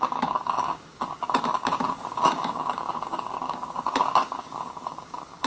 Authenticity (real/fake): fake